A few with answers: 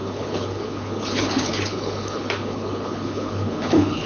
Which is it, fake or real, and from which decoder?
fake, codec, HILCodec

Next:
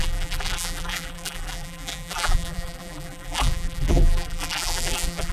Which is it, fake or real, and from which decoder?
fake, vocoder, BigVGAN v2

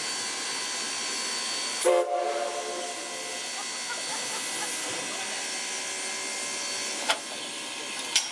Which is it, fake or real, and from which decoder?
real